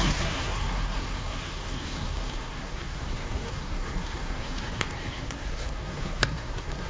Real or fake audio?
fake